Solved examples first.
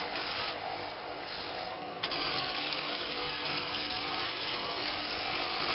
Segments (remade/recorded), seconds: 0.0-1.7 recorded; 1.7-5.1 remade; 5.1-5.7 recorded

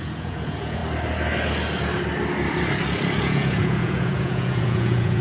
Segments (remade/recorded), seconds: 0.0-0.8 remade; 0.8-3.2 recorded; 3.2-5.2 remade

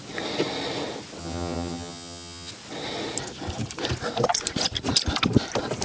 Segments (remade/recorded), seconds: 0.0-1.2 recorded; 1.2-2.5 remade; 2.5-5.8 recorded

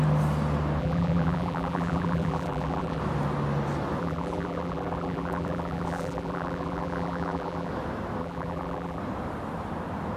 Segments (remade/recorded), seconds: 0.0-0.8 recorded; 0.8-3.0 remade; 3.0-4.0 recorded; 4.0-7.7 remade; 7.7-8.2 recorded; 8.2-9.0 remade; 9.0-10.2 recorded

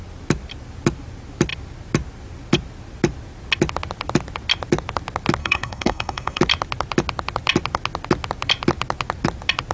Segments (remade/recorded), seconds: 0.0-5.4 recorded; 5.4-6.4 remade; 6.4-9.7 recorded

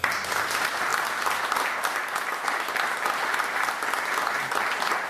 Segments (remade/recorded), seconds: 0.0-5.1 recorded

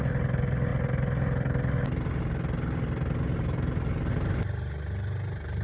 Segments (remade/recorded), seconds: 0.0-5.6 recorded